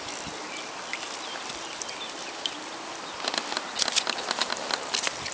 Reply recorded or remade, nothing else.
recorded